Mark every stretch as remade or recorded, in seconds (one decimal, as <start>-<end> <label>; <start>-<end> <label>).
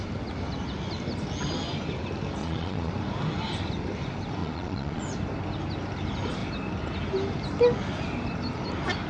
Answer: 0.0-2.4 recorded; 2.4-2.9 remade; 2.9-4.4 recorded; 4.4-5.0 remade; 5.0-9.1 recorded